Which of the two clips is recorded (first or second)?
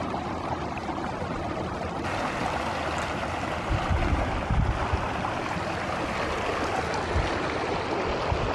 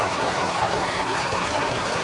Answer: first